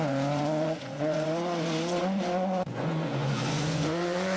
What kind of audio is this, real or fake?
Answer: fake